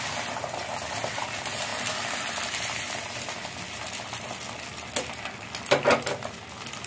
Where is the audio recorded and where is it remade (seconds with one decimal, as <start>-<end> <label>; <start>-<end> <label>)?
0.0-6.9 recorded